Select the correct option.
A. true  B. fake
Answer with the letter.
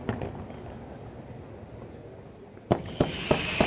A